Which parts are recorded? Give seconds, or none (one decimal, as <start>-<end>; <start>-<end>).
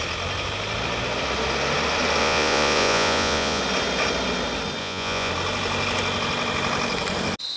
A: 0.0-2.2; 3.6-4.8; 5.3-7.6